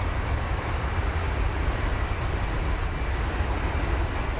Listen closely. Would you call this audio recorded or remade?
recorded